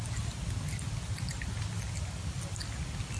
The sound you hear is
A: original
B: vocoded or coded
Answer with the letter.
A